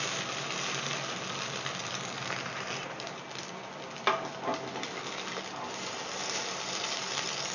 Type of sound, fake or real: real